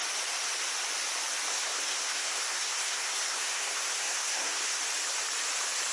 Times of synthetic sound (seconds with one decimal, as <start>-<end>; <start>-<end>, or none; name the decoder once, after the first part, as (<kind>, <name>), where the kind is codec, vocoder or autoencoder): 1.5-4.8 (codec, SNAC)